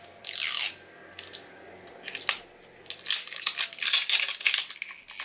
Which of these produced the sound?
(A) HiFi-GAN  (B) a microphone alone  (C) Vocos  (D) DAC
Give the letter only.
B